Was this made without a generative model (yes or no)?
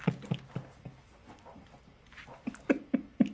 yes